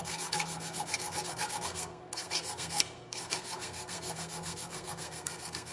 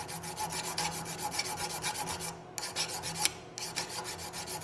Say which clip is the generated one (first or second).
first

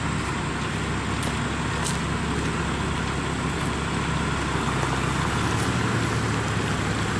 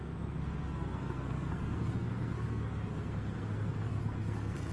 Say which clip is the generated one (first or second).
second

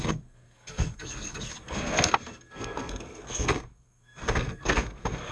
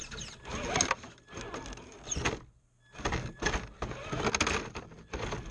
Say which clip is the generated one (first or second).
first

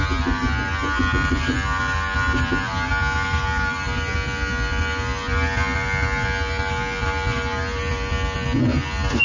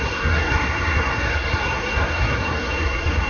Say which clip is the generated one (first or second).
second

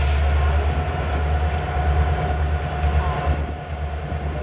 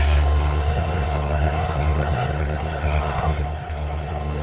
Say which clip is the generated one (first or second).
second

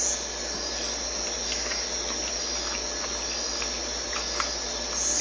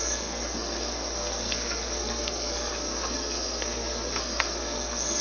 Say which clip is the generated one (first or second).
second